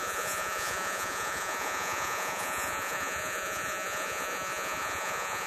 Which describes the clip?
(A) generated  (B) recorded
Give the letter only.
A